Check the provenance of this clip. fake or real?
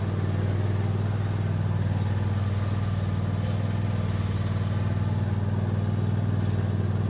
real